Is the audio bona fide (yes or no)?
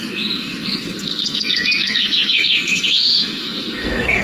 no